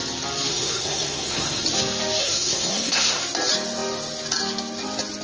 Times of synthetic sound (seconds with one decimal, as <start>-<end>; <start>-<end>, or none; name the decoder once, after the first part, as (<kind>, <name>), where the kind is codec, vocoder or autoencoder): 0.5-1.6 (codec, SNAC); 2.2-3.2